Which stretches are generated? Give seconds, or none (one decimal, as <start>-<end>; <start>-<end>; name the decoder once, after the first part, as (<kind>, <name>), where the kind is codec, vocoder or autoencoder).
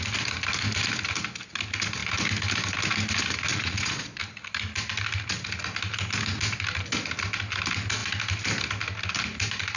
3.5-4.2 (vocoder, Vocos)